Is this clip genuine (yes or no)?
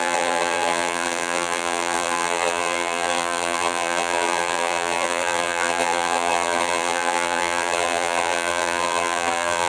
no